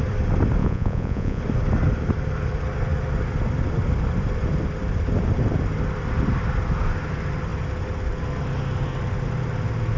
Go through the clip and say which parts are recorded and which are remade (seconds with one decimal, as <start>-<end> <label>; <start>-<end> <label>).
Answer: 0.0-0.6 recorded; 0.6-1.4 remade; 1.4-10.0 recorded